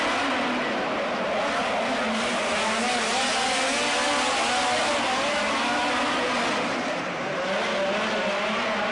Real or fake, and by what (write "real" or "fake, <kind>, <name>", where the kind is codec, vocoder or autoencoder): real